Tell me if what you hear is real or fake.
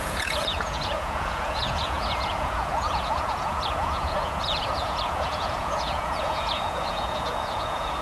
fake